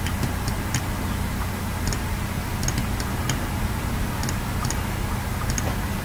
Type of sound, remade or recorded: recorded